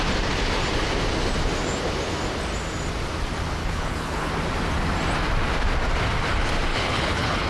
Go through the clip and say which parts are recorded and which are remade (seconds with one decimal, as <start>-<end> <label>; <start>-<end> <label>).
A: 0.0-3.6 recorded; 3.6-4.3 remade; 4.3-6.7 recorded; 6.7-7.5 remade